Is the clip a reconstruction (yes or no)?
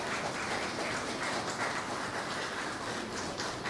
yes